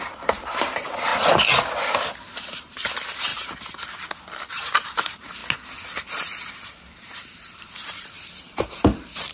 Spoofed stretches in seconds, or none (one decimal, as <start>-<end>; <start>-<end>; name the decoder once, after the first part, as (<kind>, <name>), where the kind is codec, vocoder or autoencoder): 0.0-1.1 (vocoder, BigVGAN v2); 2.1-3.3; 4.5-5.4; 6.5-9.3